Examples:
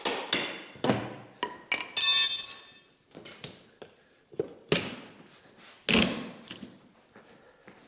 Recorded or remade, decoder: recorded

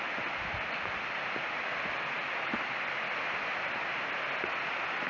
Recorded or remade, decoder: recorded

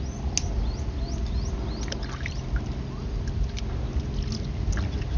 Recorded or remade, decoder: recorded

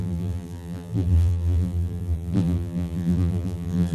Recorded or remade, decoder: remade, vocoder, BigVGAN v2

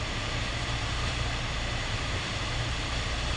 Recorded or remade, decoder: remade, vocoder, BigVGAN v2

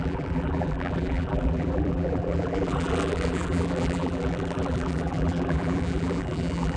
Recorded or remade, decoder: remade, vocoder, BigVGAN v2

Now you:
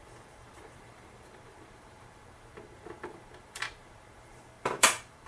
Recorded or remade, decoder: remade, vocoder, BigVGAN v2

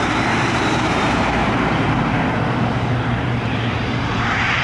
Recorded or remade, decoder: remade, vocoder, BigVGAN v2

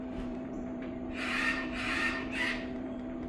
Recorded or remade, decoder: remade, vocoder, BigVGAN v2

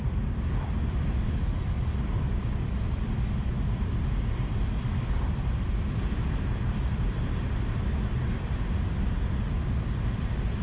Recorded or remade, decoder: remade, vocoder, BigVGAN v2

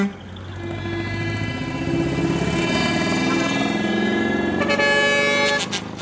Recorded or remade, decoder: recorded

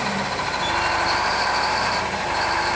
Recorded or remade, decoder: remade, vocoder, BigVGAN v2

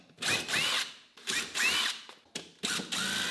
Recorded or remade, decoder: recorded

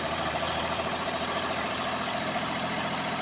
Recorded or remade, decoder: remade, vocoder, BigVGAN v2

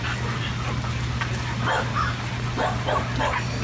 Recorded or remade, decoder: recorded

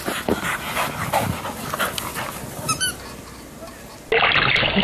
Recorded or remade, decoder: recorded